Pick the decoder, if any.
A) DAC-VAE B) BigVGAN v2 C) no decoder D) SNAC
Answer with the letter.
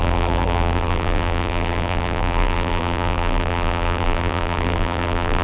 B